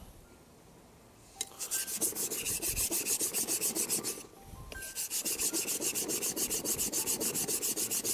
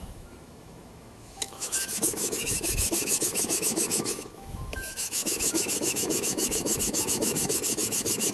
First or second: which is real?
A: first